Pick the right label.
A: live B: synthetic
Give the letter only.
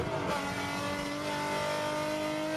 A